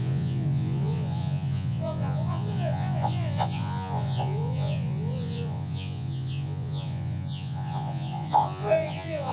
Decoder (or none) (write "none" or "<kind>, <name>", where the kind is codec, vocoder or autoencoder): vocoder, Vocos